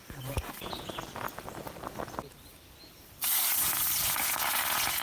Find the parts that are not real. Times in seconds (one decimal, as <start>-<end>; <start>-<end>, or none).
0.0-1.0; 4.0-5.0

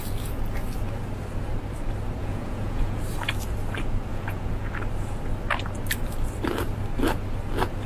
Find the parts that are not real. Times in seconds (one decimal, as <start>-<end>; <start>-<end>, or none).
2.2-3.0; 4.1-4.7

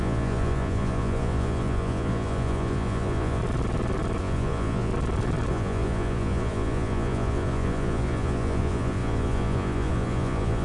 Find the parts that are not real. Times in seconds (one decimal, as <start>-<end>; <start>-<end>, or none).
0.0-3.4; 4.2-4.9; 5.5-10.6